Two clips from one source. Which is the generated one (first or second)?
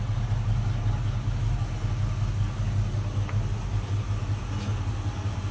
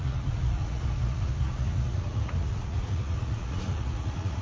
second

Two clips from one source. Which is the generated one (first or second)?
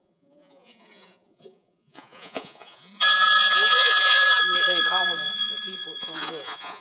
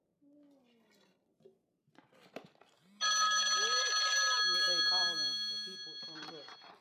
first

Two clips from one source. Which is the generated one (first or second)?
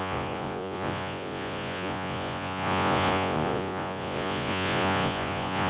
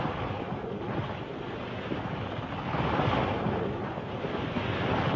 first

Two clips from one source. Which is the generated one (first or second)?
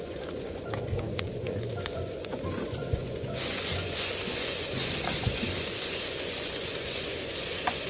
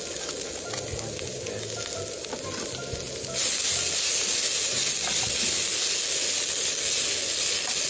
first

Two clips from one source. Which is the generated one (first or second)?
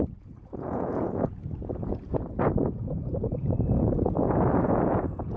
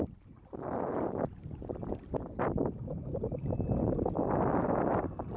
first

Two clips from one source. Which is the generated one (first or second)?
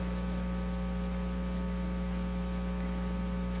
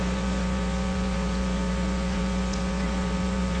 second